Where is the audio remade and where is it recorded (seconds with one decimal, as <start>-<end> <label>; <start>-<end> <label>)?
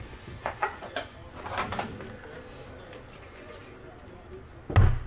0.0-1.2 remade; 1.2-3.2 recorded; 3.2-3.6 remade; 3.6-5.1 recorded